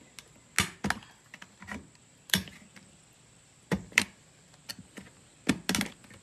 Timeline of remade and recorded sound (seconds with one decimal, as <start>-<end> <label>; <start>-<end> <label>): 0.0-2.1 recorded; 2.1-4.0 remade; 4.0-6.2 recorded